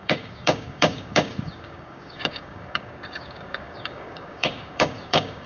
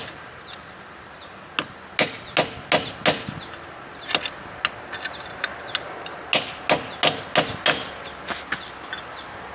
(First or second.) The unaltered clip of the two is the second